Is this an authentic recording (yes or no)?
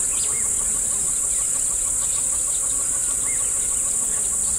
yes